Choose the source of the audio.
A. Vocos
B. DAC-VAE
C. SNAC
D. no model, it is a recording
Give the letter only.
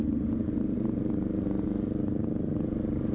D